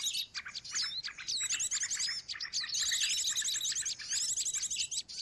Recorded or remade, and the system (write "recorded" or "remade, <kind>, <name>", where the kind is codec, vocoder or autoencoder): recorded